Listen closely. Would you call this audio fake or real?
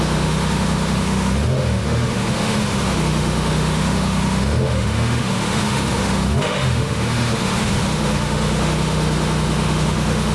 fake